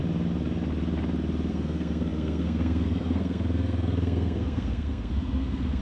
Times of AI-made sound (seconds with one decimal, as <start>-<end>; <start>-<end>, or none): 1.5-5.8